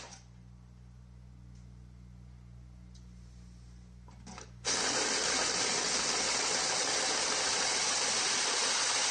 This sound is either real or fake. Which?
real